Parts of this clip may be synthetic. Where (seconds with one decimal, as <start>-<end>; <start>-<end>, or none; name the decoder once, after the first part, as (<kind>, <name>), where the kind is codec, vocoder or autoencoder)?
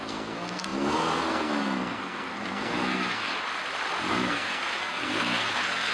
0.0-3.3 (codec, SNAC); 4.1-5.9